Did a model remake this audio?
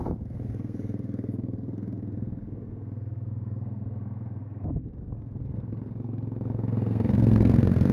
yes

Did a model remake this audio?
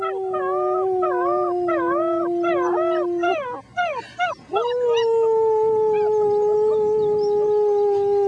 no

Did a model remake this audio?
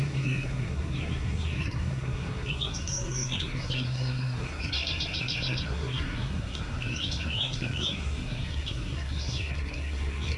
yes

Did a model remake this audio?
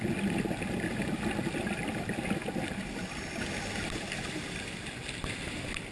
no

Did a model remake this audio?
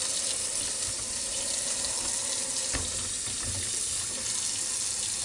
no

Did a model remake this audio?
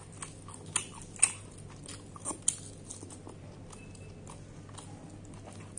no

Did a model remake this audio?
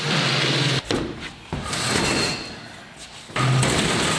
no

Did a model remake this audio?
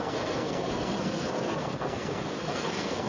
yes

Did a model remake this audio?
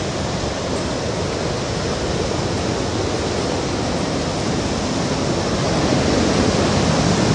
no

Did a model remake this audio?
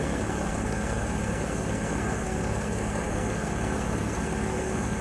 yes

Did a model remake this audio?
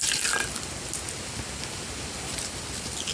no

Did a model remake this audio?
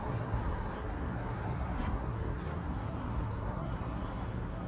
yes